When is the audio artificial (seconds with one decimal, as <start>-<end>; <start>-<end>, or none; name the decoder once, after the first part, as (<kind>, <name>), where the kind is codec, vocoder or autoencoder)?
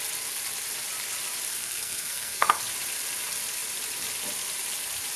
1.5-2.6 (codec, SNAC)